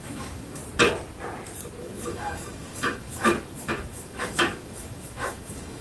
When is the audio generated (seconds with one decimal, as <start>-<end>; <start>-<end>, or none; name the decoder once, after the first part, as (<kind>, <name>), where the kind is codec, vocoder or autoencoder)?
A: 0.0-0.6 (autoencoder, DAC-VAE); 1.8-5.8